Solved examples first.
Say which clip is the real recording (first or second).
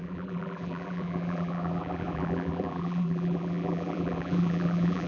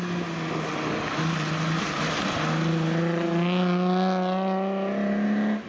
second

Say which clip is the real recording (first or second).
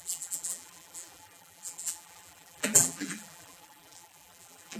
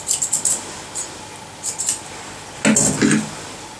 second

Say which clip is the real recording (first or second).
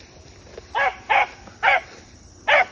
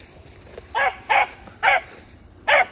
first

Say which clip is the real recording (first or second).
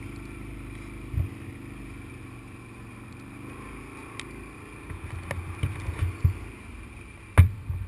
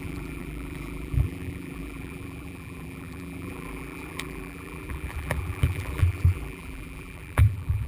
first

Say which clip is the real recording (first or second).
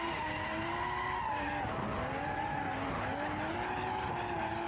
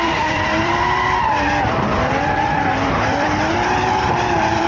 first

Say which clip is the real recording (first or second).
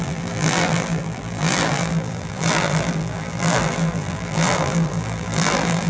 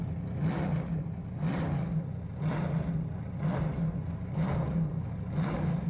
second